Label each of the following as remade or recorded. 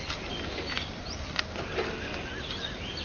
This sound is recorded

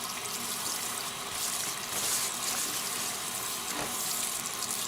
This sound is recorded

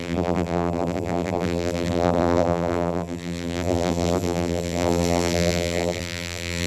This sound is remade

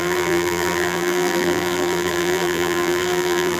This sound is remade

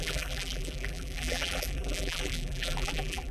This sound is remade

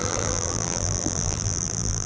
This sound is remade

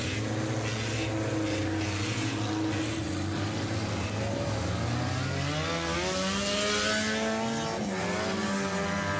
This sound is recorded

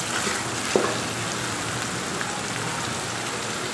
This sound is recorded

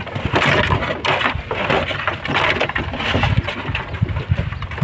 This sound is recorded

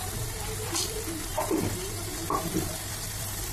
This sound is remade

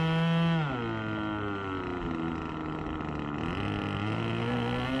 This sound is recorded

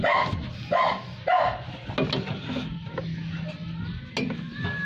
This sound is recorded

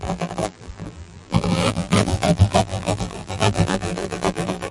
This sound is remade